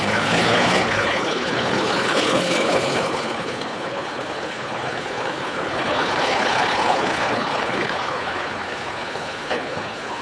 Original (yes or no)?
no